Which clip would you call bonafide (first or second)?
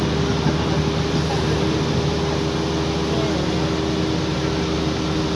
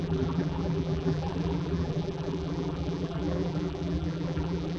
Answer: first